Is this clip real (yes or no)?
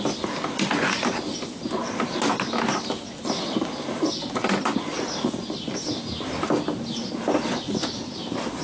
yes